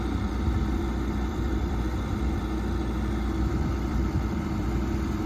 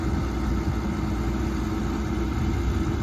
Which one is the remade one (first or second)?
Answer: first